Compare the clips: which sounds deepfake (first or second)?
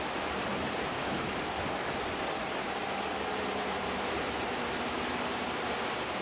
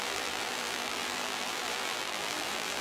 second